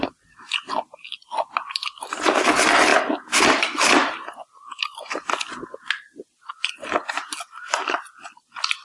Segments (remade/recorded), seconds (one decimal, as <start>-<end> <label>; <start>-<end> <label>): 0.0-2.9 recorded; 2.9-4.1 remade; 4.1-4.6 recorded; 4.6-6.7 remade; 6.7-8.8 recorded